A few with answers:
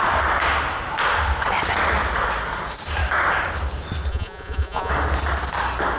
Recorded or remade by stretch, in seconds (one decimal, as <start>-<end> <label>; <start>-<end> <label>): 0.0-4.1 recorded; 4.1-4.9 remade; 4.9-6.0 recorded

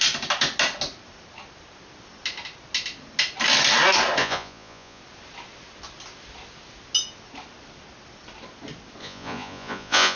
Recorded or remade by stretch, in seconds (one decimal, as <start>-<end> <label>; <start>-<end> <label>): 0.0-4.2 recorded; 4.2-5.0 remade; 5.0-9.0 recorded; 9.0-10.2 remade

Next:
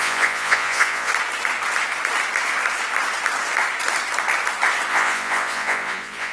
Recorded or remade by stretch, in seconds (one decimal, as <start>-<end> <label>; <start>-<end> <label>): 0.0-1.1 remade; 1.1-4.9 recorded; 4.9-6.3 remade

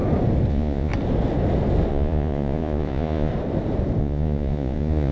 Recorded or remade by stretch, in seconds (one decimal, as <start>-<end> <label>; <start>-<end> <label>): 0.0-0.5 recorded; 0.5-0.9 remade; 0.9-1.9 recorded; 1.9-3.3 remade; 3.3-4.0 recorded; 4.0-5.1 remade